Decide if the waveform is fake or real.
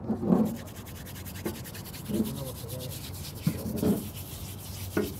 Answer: real